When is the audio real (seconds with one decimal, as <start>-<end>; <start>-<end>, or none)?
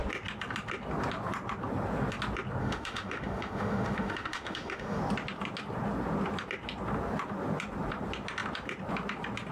0.0-2.6; 5.0-9.5